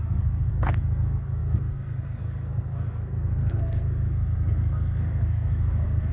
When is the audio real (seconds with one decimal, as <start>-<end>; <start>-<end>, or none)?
none